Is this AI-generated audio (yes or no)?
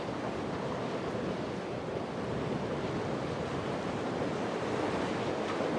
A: no